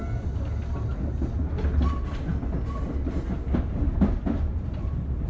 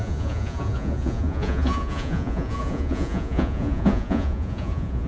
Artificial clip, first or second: second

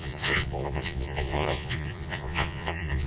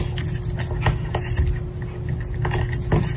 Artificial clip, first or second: first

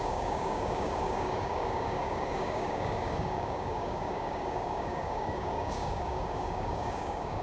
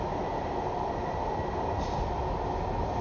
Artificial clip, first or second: first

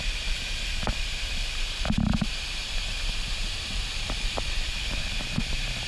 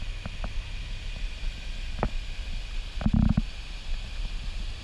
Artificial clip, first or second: first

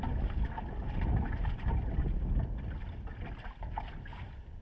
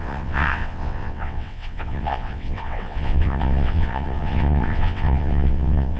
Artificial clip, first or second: second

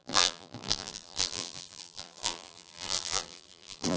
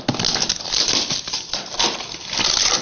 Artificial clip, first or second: first